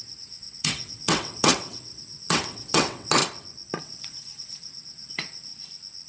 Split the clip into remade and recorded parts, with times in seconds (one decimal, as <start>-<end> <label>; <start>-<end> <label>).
0.0-3.2 remade; 3.2-3.8 recorded; 3.8-5.5 remade; 5.5-6.1 recorded